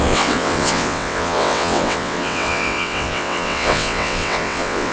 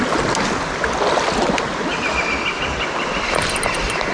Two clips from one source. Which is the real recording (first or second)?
second